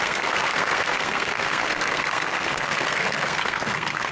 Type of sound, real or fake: fake